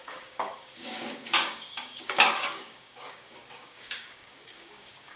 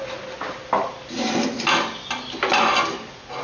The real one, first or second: second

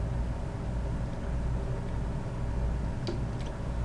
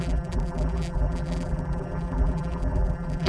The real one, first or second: first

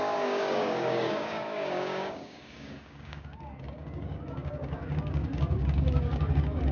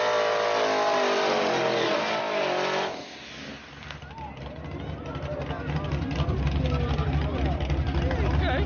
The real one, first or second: second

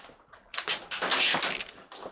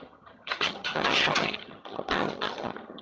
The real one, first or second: first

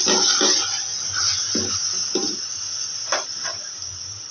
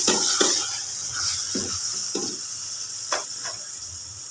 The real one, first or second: first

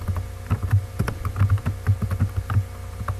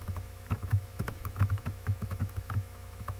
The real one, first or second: first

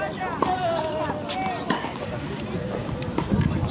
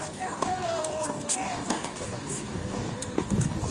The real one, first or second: first